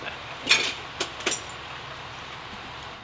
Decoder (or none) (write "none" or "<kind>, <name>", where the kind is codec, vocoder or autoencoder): none